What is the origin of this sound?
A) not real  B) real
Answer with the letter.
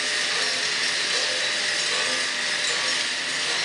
B